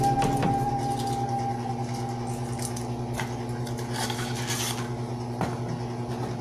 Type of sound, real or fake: real